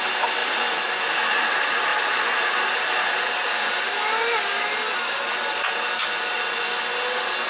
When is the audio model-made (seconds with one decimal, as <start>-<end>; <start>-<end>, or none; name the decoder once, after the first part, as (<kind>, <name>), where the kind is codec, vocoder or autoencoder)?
none